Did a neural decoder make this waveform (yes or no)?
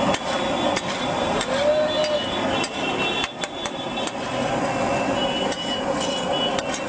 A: no